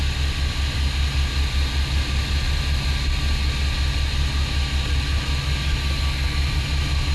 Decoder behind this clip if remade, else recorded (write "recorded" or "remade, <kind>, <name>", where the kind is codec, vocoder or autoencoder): recorded